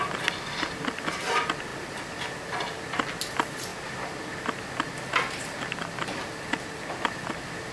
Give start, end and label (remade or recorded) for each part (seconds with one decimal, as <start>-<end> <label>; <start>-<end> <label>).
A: 0.0-7.7 recorded